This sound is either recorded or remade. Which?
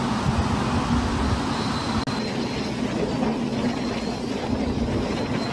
recorded